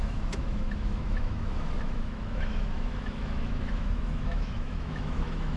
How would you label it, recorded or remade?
remade